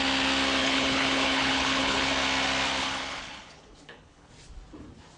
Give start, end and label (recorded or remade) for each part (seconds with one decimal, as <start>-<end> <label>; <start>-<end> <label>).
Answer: 0.0-0.6 recorded; 0.6-2.1 remade; 2.1-2.8 recorded; 2.8-4.3 remade; 4.3-5.2 recorded